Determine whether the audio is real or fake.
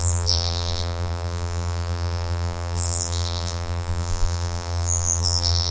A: fake